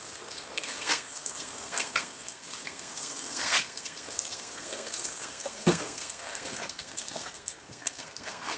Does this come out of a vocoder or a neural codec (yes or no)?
yes